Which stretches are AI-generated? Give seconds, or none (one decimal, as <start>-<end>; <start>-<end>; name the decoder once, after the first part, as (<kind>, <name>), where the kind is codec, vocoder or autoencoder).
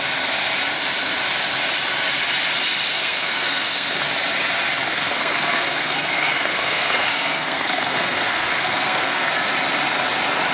2.9-4.0 (codec, SNAC); 4.9-9.3